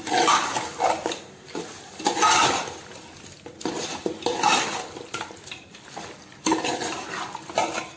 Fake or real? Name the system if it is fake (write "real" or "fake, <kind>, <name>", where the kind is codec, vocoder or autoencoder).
real